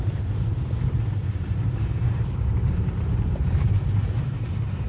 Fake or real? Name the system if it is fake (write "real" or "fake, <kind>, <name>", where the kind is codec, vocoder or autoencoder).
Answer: fake, vocoder, BigVGAN v2